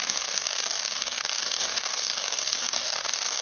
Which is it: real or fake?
fake